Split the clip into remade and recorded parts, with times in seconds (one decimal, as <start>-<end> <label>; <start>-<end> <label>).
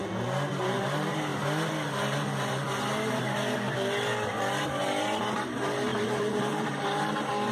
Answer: 0.0-0.6 recorded; 0.6-1.3 remade; 1.3-5.0 recorded; 5.0-7.5 remade